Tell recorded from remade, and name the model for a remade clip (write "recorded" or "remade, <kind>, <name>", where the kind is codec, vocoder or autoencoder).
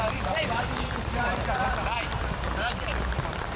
remade, vocoder, BigVGAN v2